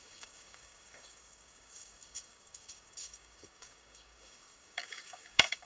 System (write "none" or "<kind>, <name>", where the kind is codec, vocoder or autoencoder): codec, DAC